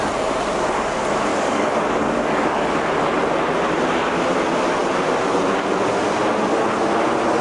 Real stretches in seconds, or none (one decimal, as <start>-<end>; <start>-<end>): 0.0-1.3; 2.9-7.4